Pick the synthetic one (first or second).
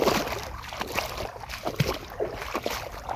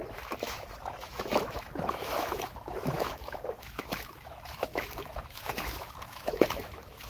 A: second